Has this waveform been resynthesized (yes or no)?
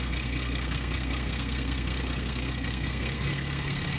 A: yes